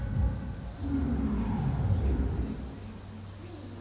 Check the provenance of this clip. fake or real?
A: real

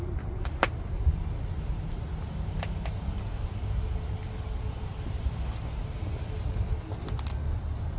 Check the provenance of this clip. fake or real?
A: real